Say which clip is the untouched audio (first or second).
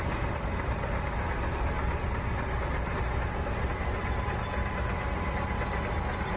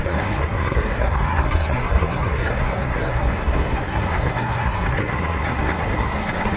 first